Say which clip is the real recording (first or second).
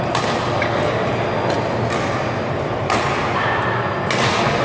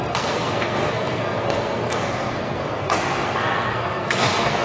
first